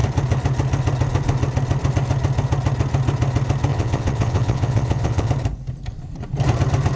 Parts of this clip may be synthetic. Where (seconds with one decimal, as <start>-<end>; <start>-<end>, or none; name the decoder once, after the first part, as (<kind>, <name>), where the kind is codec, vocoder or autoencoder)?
3.7-5.3 (vocoder, WaveNeXt)